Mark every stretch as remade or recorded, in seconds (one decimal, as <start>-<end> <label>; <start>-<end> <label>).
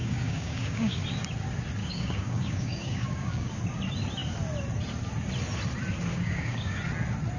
0.0-1.0 remade; 1.0-1.8 recorded; 1.8-3.5 remade; 3.5-6.1 recorded; 6.1-6.8 remade; 6.8-7.4 recorded